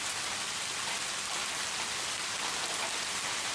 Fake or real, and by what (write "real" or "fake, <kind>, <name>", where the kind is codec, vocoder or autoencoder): real